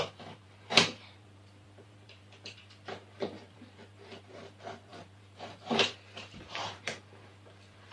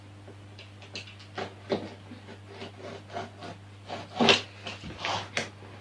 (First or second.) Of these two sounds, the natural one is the second